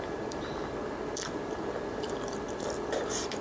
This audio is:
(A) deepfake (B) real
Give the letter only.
A